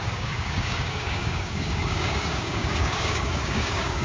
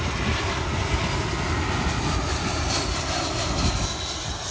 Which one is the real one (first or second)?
second